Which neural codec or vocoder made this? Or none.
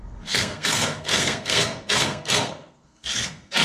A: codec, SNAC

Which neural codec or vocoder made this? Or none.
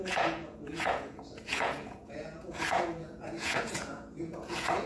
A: vocoder, Vocos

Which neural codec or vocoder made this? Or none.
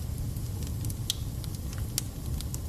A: none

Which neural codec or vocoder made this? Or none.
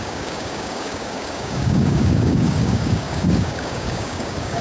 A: codec, DAC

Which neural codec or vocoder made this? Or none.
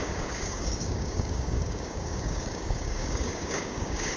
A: codec, DAC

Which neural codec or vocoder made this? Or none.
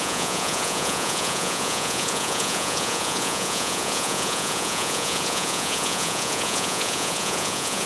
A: vocoder, Vocos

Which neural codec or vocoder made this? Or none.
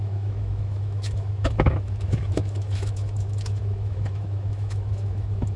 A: autoencoder, DAC-VAE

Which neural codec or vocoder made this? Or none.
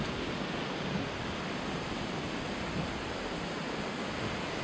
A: none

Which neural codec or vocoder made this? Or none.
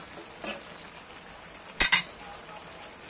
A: none